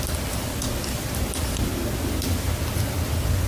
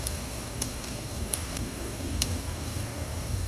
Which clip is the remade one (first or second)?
second